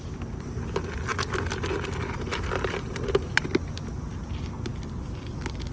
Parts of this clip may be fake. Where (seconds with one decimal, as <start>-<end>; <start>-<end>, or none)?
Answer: none